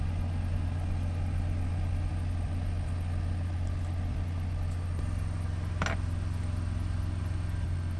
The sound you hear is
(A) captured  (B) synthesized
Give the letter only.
A